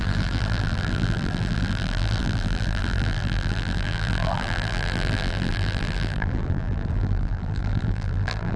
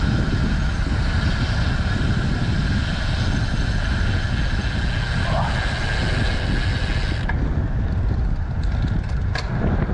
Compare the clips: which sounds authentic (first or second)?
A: second